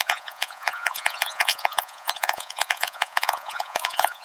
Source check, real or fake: fake